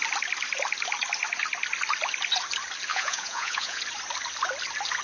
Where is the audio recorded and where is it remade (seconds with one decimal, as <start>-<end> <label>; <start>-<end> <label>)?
0.0-2.9 recorded; 2.9-3.8 remade; 3.8-5.0 recorded